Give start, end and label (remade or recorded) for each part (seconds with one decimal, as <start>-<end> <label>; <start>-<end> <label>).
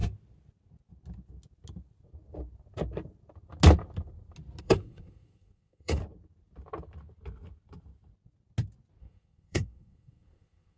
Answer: 0.0-4.6 recorded; 4.6-6.0 remade; 6.0-9.0 recorded; 9.0-10.8 remade